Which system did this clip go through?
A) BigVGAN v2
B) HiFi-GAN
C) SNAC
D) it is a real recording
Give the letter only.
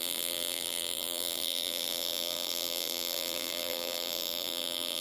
A